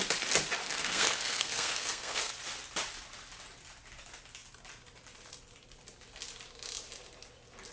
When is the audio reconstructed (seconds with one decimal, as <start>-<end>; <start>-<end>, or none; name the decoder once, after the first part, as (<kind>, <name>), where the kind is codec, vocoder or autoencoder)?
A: 0.6-2.3 (codec, SNAC)

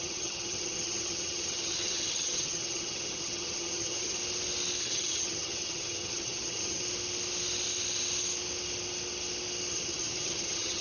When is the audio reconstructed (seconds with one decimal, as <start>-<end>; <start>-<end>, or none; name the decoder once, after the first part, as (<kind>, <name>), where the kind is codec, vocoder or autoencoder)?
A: 0.0-4.2 (vocoder, HiFi-GAN); 4.8-6.8; 9.7-10.8

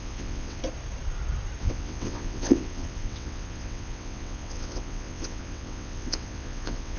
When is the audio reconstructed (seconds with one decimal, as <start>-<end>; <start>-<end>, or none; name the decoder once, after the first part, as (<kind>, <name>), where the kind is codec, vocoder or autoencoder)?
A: 0.0-0.6 (vocoder, WaveNeXt); 1.6-7.0

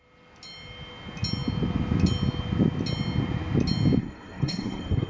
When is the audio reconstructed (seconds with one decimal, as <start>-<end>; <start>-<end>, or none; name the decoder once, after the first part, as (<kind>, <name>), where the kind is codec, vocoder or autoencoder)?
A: 4.0-5.1 (codec, SNAC)